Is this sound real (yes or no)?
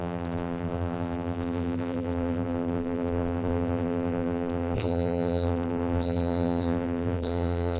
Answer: no